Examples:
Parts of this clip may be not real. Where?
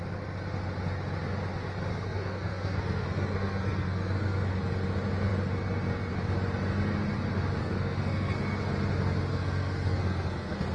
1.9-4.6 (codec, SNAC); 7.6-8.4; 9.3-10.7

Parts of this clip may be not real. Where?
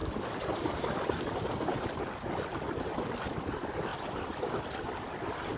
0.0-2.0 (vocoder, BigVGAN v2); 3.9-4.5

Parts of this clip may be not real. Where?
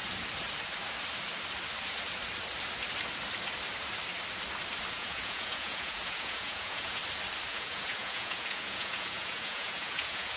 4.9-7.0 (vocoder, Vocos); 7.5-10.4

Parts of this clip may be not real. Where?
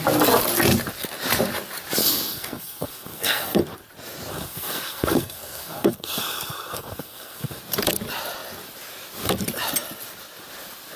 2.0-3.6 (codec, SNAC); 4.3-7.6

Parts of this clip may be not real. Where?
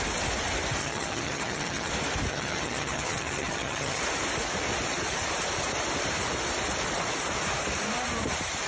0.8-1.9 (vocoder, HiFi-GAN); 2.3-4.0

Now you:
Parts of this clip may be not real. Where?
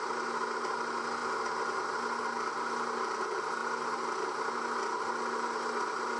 none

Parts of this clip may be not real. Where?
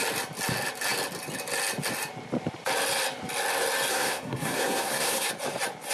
3.9-5.3 (codec, SNAC)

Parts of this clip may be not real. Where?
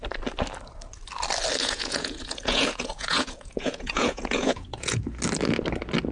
1.6-5.0 (vocoder, Vocos)